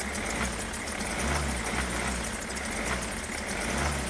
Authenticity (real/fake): real